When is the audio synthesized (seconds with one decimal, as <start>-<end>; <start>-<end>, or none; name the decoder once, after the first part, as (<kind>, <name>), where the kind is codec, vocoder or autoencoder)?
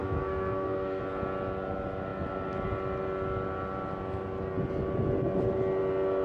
0.0-1.0 (codec, SNAC)